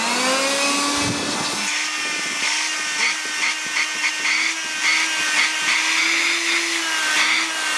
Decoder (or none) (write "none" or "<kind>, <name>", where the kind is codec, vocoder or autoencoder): none